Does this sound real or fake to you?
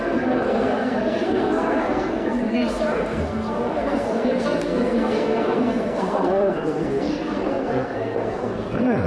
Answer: fake